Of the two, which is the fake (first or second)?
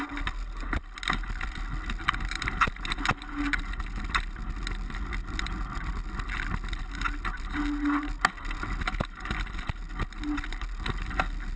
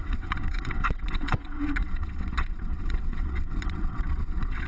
second